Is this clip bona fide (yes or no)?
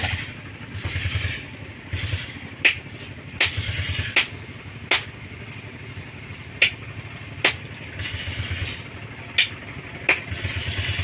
yes